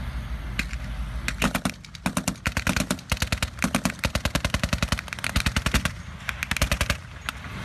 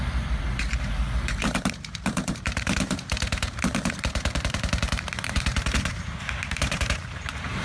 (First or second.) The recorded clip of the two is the first